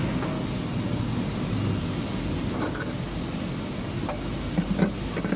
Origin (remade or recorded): recorded